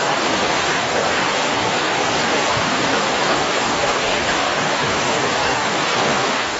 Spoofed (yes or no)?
yes